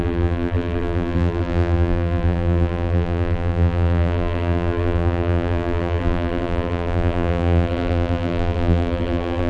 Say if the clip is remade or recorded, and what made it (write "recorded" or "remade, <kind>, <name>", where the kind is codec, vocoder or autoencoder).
remade, vocoder, BigVGAN v2